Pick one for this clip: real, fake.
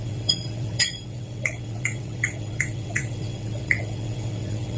fake